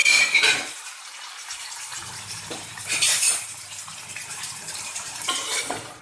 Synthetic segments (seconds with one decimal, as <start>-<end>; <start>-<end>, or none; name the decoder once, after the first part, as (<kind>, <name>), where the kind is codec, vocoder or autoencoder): 0.0-3.6 (vocoder, BigVGAN v2); 4.2-6.0